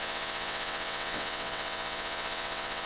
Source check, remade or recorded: remade